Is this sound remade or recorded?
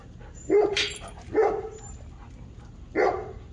recorded